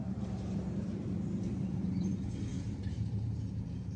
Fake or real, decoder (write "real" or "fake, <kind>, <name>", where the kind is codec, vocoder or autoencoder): fake, vocoder, BigVGAN v2